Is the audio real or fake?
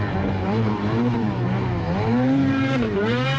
fake